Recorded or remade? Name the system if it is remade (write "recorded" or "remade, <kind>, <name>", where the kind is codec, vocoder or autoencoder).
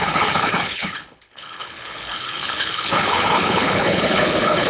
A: remade, codec, HILCodec